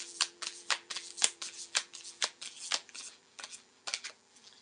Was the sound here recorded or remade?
remade